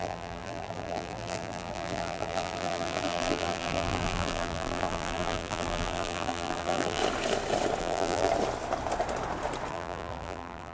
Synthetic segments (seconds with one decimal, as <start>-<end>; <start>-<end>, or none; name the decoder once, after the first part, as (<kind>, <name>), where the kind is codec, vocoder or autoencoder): 0.0-7.0 (vocoder, BigVGAN v2); 7.8-8.3; 9.7-10.7